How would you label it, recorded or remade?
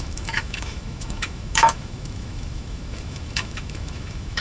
remade